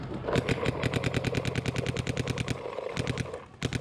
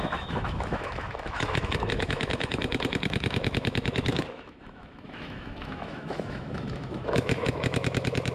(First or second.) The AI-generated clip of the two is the second